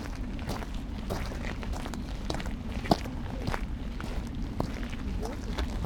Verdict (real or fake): real